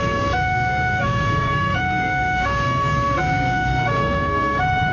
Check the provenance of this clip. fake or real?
fake